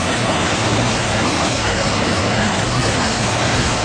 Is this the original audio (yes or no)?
no